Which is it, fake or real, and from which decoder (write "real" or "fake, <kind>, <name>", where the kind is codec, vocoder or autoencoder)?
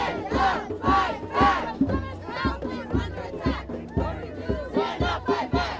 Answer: real